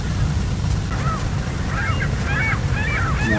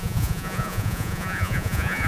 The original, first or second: first